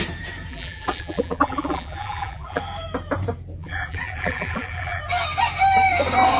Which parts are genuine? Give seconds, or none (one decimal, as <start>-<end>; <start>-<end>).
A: 0.0-0.5; 2.6-3.6; 5.0-6.4